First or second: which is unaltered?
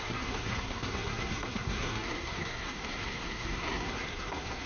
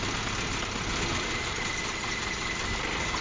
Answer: second